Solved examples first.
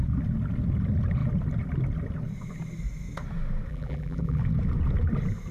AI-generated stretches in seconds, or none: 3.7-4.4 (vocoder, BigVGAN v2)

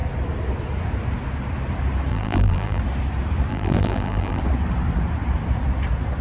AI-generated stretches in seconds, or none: 2.1-2.8 (vocoder, BigVGAN v2); 3.5-4.4